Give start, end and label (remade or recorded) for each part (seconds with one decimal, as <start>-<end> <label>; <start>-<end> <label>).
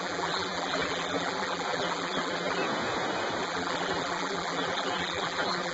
0.0-2.6 remade; 2.6-3.4 recorded; 3.4-5.7 remade